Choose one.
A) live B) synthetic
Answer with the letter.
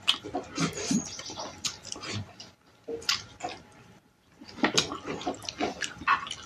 A